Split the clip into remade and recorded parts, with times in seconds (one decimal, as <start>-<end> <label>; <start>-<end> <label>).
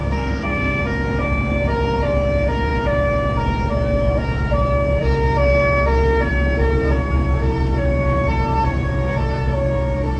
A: 0.0-0.8 remade; 0.8-10.2 recorded